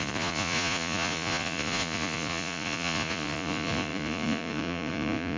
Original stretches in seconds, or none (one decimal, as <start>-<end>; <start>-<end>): none